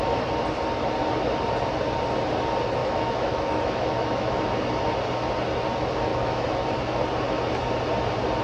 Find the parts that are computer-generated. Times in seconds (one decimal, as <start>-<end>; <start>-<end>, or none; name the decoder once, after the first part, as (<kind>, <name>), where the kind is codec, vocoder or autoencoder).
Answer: 2.8-4.4 (autoencoder, DAC-VAE); 6.1-6.8